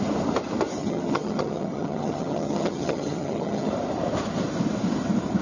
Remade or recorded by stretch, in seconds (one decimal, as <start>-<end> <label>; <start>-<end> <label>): 0.0-0.8 recorded; 0.8-3.7 remade; 3.7-5.4 recorded